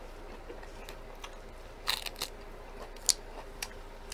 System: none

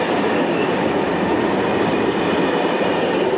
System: none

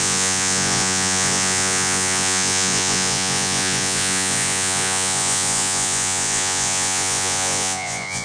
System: vocoder, Vocos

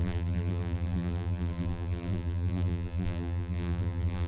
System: vocoder, BigVGAN v2